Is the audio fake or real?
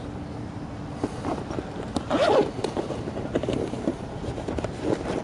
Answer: fake